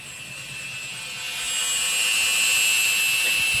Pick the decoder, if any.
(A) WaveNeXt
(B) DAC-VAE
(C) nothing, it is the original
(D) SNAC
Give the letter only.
C